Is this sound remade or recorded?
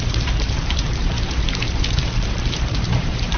remade